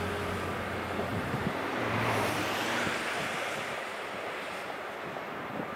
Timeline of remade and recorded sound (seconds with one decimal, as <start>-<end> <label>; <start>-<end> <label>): 0.0-1.1 recorded; 1.1-4.6 remade; 4.6-5.8 recorded